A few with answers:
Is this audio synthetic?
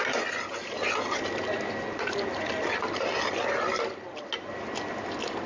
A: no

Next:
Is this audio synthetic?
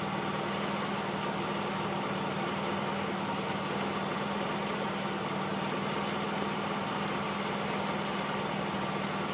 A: no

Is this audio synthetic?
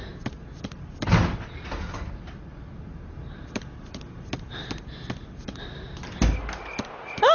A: no